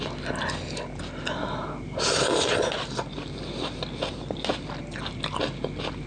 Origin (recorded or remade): recorded